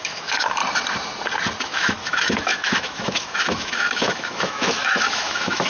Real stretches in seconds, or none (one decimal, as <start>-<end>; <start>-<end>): 0.6-1.6